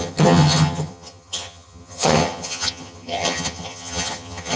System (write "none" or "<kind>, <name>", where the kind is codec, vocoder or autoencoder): vocoder, HiFi-GAN